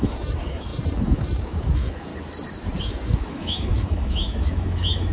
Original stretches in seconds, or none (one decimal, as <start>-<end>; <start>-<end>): 2.1-2.8